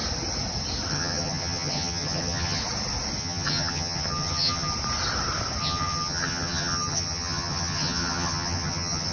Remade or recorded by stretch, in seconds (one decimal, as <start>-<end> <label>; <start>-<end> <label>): 0.0-0.9 recorded; 0.9-2.6 remade; 2.6-3.2 recorded; 3.2-4.7 remade; 4.7-5.6 recorded; 5.6-9.1 remade